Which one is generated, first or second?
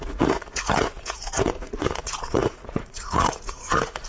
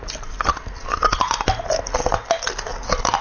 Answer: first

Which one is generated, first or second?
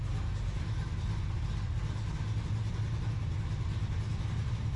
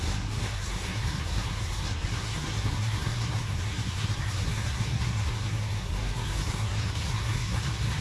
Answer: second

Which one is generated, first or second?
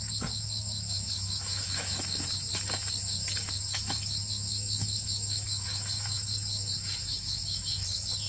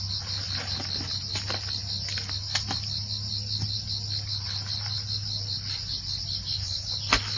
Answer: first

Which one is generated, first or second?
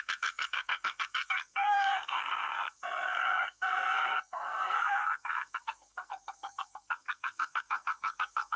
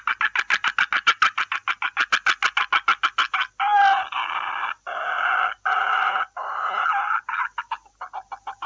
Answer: first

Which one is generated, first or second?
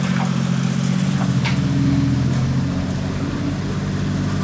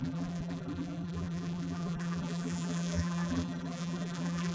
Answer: second